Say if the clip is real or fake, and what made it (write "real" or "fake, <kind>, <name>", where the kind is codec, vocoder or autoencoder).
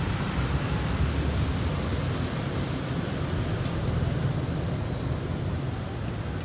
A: real